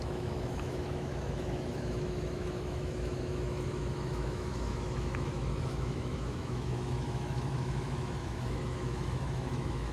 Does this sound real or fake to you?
fake